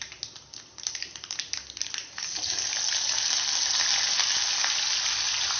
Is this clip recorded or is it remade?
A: recorded